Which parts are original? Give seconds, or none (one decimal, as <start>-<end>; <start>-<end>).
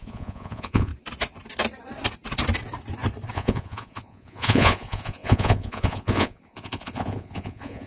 0.9-3.3